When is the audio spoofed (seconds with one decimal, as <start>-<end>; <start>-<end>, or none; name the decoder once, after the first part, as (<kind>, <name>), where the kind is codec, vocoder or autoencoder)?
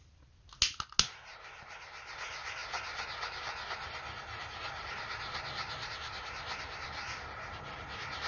none